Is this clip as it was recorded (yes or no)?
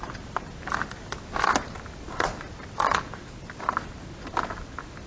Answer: yes